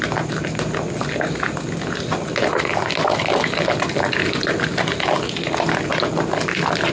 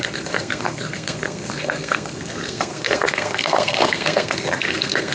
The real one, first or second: first